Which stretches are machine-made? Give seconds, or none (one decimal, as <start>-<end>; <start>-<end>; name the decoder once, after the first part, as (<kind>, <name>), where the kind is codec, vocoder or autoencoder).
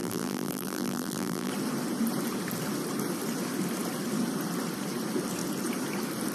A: 0.0-1.5 (vocoder, BigVGAN v2)